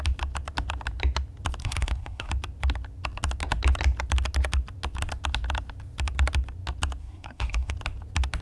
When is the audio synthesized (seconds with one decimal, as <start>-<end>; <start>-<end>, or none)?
1.6-2.3; 7.0-7.7